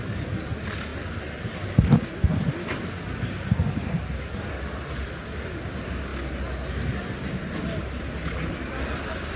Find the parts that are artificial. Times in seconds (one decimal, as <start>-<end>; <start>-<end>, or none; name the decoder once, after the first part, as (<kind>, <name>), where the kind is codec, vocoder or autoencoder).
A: none